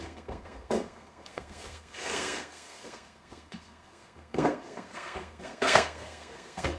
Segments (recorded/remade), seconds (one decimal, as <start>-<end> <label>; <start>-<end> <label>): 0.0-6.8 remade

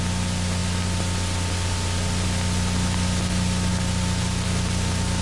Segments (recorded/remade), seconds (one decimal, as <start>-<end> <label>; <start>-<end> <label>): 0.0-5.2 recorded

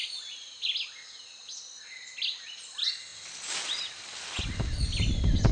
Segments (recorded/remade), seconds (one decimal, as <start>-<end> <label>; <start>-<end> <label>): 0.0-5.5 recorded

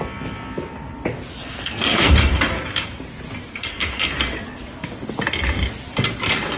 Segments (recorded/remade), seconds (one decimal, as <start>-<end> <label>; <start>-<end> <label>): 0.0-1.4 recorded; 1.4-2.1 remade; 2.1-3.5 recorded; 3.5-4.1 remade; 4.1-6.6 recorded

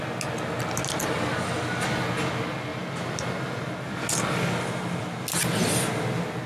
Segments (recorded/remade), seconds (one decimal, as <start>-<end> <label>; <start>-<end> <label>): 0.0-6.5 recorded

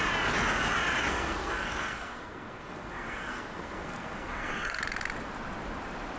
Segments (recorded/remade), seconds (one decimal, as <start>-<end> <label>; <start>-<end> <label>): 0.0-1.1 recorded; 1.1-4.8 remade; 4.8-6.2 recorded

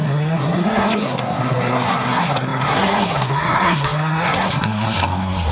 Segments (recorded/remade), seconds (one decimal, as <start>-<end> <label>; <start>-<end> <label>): 0.0-5.5 remade

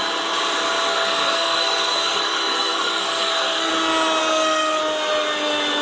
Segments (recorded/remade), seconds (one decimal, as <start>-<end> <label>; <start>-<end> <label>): 0.0-0.9 recorded; 0.9-3.7 remade; 3.7-4.2 recorded; 4.2-4.8 remade; 4.8-5.8 recorded